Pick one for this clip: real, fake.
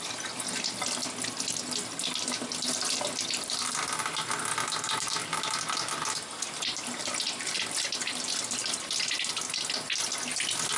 real